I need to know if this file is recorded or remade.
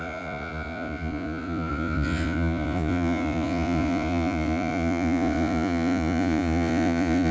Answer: remade